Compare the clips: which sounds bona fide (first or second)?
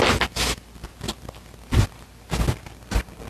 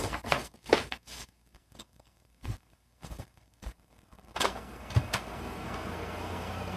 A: first